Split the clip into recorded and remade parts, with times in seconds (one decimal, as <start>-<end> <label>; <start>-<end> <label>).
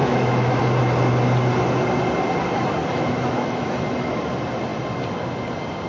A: 0.0-0.6 remade; 0.6-2.8 recorded; 2.8-4.3 remade; 4.3-5.9 recorded